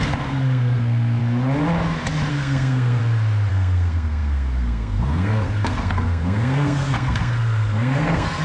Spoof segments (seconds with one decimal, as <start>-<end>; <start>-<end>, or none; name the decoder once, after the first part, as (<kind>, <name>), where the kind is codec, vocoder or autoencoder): 0.0-1.2 (codec, SNAC); 2.3-3.0; 3.5-8.4